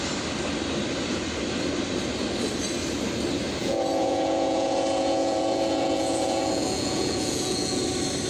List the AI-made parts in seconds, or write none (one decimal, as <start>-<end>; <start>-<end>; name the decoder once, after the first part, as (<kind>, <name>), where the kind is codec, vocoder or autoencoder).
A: 3.6-7.8 (vocoder, Vocos)